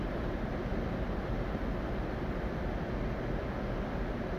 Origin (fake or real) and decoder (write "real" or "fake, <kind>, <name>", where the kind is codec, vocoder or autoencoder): real